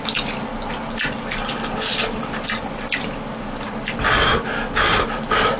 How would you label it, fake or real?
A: real